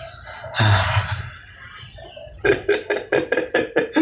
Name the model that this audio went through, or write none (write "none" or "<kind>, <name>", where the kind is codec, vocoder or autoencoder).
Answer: none